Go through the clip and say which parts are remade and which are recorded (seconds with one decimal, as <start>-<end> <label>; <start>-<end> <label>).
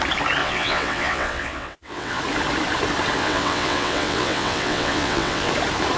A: 0.0-0.4 recorded; 0.4-2.2 remade; 2.2-3.2 recorded; 3.2-5.5 remade; 5.5-6.0 recorded